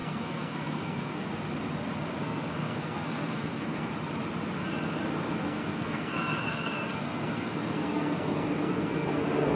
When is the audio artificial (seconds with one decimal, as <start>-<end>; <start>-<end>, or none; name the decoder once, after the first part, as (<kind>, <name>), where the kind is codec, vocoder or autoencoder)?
0.0-1.3 (codec, SNAC); 2.2-3.9; 5.4-9.6